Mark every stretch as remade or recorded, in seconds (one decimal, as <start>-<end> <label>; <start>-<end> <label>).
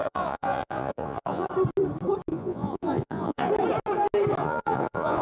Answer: 0.0-1.5 remade; 1.5-2.3 recorded; 2.3-3.5 remade; 3.5-4.4 recorded; 4.4-5.2 remade